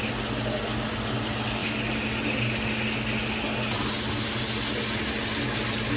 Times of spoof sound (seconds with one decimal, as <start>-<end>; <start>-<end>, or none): none